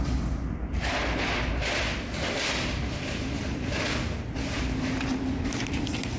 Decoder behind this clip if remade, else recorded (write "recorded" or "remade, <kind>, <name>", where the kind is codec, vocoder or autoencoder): recorded